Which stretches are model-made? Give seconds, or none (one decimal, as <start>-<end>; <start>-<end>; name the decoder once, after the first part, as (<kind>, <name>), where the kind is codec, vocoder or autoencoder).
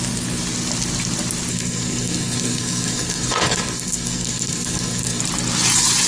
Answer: 1.5-5.2 (codec, SNAC)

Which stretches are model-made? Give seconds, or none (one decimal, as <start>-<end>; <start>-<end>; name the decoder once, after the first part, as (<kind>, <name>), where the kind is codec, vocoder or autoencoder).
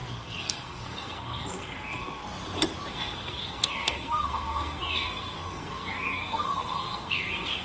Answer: 0.0-2.2 (codec, SNAC); 2.9-7.6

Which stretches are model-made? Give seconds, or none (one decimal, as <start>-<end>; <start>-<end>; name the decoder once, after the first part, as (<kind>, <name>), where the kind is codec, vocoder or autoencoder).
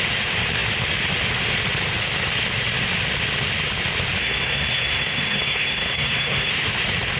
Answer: 4.2-6.5 (codec, SNAC)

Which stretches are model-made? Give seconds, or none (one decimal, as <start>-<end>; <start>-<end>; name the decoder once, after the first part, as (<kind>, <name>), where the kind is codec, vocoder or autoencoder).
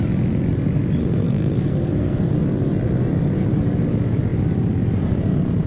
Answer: 1.0-2.3 (codec, SNAC)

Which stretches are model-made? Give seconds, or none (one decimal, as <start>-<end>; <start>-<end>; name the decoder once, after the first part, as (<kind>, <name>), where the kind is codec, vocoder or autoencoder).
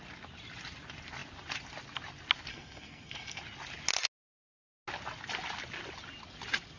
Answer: 2.5-3.4 (codec, SNAC)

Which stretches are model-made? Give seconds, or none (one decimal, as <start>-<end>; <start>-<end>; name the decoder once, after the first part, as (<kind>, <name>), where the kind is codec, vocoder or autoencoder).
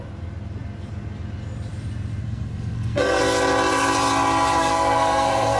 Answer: 2.2-3.2 (codec, SNAC); 4.6-5.6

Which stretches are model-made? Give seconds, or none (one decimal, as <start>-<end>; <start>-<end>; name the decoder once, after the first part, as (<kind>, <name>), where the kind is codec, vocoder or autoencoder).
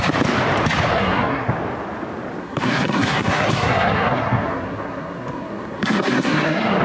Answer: 0.9-1.5 (codec, SNAC); 2.4-6.8